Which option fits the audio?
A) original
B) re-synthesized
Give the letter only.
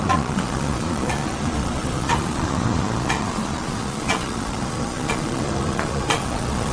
B